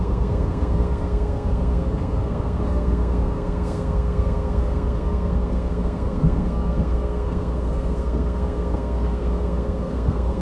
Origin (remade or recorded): remade